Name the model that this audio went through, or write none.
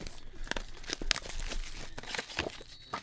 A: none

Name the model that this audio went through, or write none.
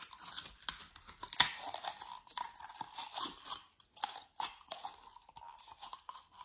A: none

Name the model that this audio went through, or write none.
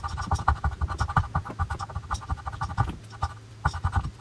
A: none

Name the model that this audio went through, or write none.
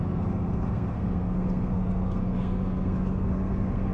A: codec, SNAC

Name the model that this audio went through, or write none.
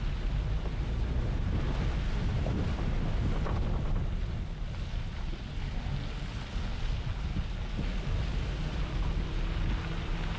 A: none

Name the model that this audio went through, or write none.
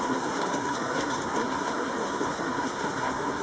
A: codec, SNAC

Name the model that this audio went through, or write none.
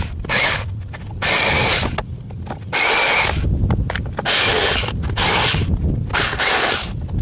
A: none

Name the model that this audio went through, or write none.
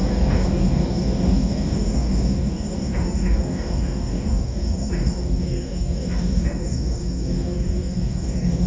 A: codec, DAC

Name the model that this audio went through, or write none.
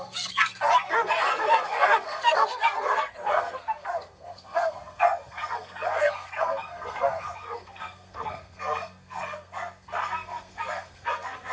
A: codec, SNAC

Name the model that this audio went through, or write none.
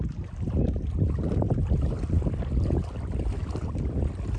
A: none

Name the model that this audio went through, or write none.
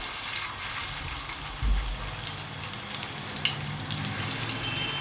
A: none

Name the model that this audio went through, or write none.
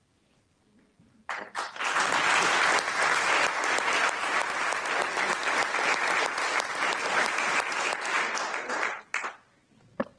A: none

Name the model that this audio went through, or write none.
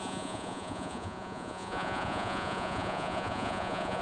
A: vocoder, Vocos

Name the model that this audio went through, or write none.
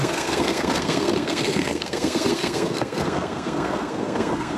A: codec, SNAC